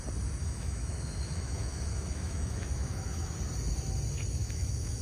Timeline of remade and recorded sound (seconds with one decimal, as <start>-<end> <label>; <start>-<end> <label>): 0.0-0.4 recorded; 0.4-3.4 remade; 3.4-4.4 recorded; 4.4-5.0 remade